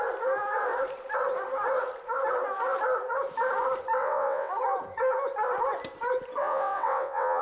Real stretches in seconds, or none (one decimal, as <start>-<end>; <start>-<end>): 0.0-4.0; 4.5-6.4